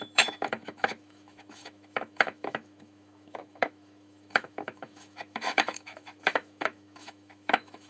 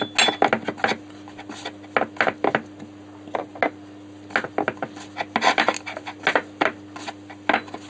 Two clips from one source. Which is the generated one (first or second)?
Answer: first